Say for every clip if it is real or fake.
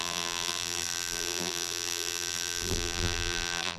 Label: fake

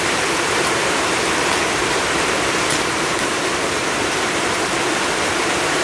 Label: fake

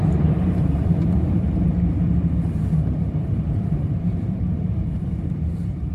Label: fake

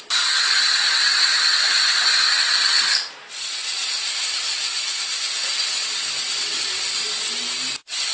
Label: real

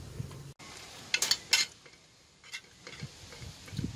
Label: real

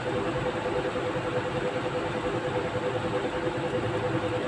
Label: real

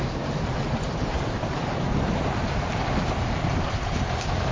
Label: fake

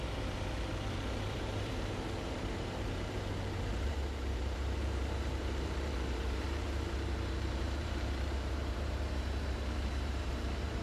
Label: fake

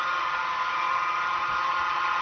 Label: real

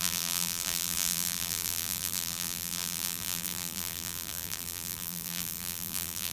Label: fake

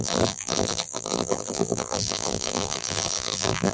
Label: fake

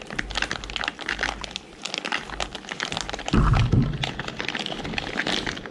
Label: real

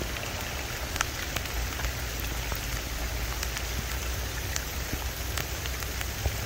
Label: real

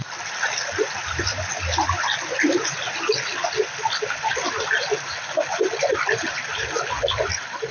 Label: real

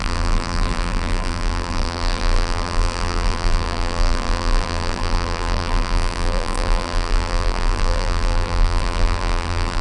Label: fake